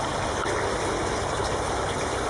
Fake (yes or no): no